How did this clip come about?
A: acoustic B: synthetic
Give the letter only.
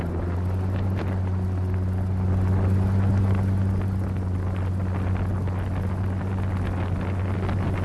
A